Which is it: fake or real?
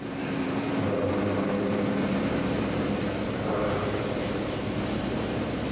fake